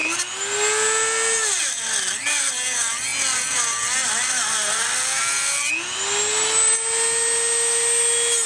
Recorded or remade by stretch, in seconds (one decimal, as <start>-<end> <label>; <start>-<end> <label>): 0.0-8.5 recorded